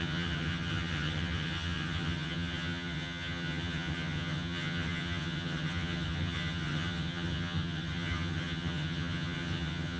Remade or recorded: remade